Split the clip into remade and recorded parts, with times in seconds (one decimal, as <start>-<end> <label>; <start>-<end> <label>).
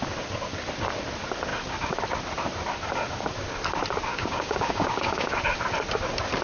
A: 0.0-4.1 recorded; 4.1-5.3 remade; 5.3-6.4 recorded